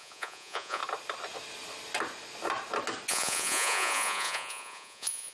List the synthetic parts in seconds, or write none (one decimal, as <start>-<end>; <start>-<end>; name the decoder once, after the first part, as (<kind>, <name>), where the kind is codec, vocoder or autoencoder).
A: 0.0-0.8 (vocoder, Vocos); 3.1-5.3